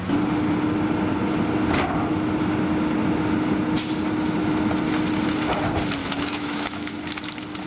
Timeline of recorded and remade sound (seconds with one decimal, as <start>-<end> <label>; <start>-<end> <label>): 0.0-6.0 recorded; 6.0-6.9 remade; 6.9-7.7 recorded